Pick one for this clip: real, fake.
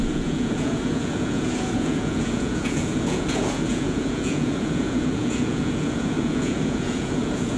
fake